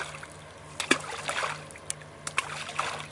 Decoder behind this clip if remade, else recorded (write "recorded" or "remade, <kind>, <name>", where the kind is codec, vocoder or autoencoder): recorded